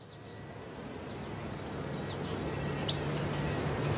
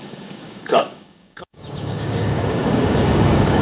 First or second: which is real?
first